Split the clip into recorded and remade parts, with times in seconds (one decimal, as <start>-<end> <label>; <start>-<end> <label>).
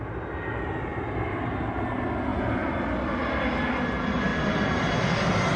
0.0-5.6 recorded